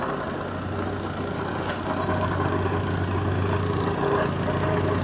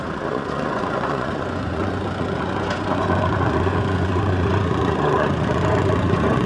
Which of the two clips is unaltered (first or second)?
first